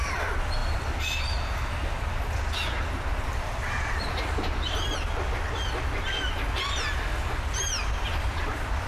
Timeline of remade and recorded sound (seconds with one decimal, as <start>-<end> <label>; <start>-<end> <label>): 0.0-8.9 recorded